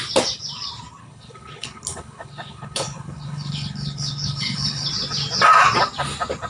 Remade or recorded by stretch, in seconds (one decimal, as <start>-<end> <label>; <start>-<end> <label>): 0.0-1.0 recorded; 1.0-4.9 remade; 4.9-6.5 recorded